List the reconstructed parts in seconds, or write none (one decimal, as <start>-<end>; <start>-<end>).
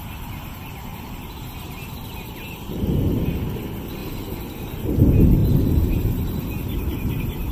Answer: 0.9-1.4; 5.4-6.4